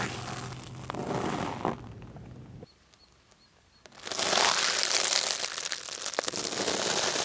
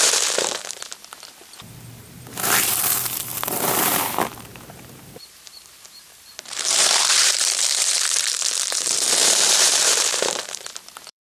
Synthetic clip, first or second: second